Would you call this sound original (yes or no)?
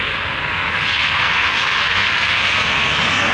no